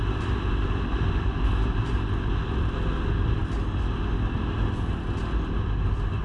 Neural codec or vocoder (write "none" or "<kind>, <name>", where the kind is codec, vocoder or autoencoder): none